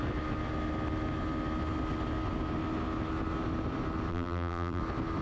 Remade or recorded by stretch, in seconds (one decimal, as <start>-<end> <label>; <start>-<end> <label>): 0.0-4.1 recorded; 4.1-4.8 remade; 4.8-5.2 recorded